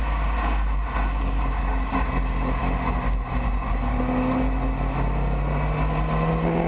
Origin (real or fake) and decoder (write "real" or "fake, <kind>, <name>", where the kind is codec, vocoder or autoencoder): real